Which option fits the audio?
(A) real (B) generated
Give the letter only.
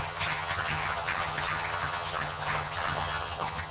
B